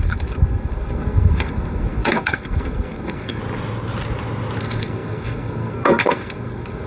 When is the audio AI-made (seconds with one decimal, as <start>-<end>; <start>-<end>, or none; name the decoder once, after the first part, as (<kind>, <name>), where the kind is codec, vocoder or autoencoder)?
0.0-3.4 (codec, SNAC); 4.6-6.9